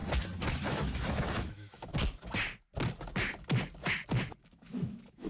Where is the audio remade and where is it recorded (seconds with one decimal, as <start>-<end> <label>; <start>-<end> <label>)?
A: 0.0-0.5 recorded; 0.5-1.9 remade; 1.9-4.4 recorded; 4.4-5.3 remade